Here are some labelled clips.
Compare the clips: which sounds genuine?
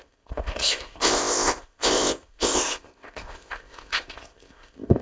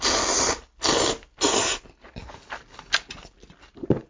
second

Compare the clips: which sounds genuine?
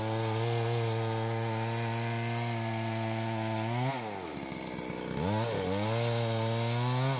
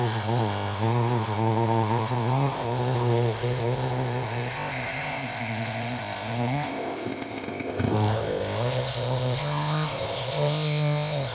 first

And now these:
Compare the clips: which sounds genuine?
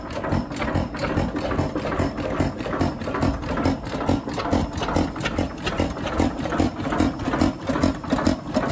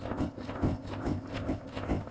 first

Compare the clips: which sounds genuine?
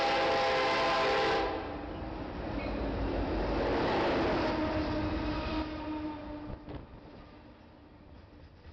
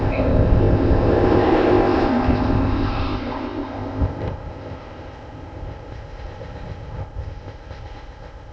first